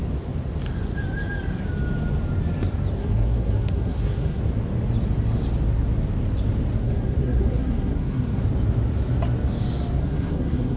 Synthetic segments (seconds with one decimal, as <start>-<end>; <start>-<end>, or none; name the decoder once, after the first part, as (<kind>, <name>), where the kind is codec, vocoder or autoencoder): 3.0-4.4 (codec, SNAC); 6.8-8.4; 10.0-10.8